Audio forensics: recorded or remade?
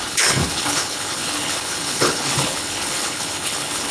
remade